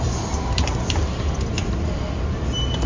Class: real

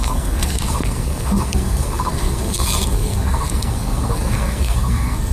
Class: fake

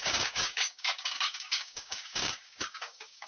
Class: fake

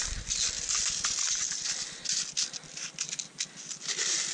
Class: real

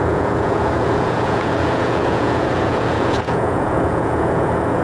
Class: fake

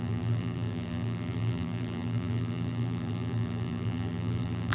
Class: fake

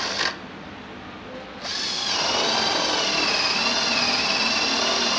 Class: real